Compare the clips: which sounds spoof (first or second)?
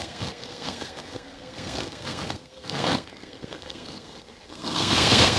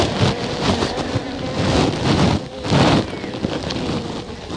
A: first